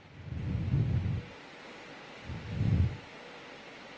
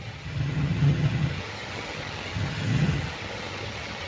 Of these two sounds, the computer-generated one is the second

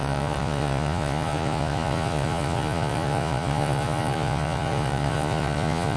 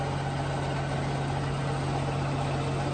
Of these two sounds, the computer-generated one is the first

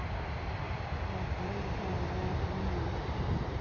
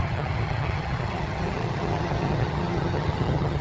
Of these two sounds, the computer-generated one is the second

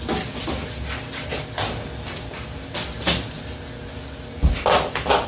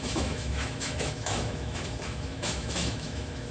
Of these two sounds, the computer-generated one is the second